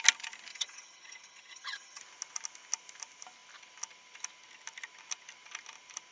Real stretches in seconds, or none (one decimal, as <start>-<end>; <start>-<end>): 0.0-0.5; 2.0-6.1